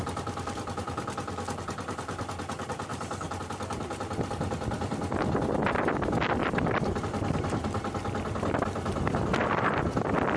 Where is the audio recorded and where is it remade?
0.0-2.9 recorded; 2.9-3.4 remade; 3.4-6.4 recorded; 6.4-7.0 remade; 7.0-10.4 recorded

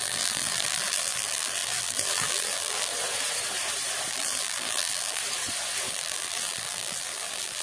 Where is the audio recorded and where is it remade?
0.0-2.9 remade; 2.9-4.1 recorded; 4.1-5.2 remade; 5.2-5.9 recorded; 5.9-7.6 remade